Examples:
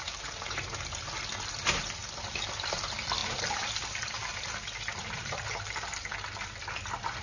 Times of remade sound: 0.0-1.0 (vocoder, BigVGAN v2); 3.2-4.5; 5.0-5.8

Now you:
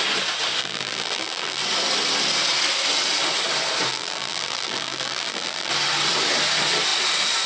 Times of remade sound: 0.6-1.6 (vocoder, BigVGAN v2); 3.9-5.7

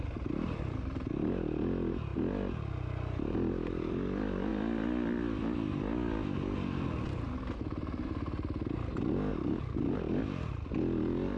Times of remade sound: 0.0-2.1 (vocoder, BigVGAN v2); 3.2-4.5; 9.3-11.4

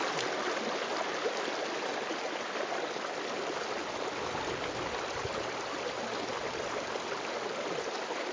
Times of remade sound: none

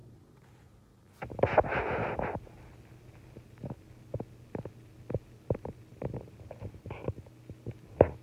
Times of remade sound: 5.9-7.2 (vocoder, BigVGAN v2)

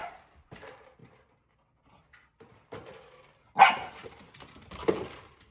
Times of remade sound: 0.0-1.0 (vocoder, BigVGAN v2); 4.3-5.5